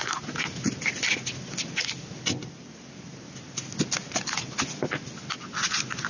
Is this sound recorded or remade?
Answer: recorded